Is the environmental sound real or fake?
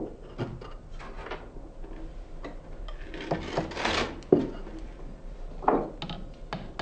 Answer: real